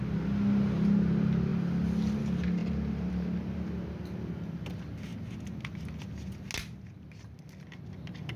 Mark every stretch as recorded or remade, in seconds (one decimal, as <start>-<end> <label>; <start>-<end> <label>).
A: 0.0-8.4 recorded